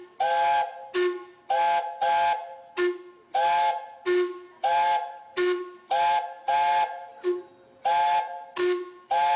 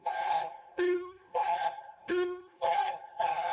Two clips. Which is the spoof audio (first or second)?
second